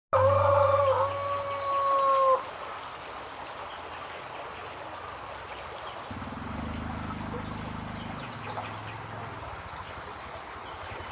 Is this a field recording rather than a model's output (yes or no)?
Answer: yes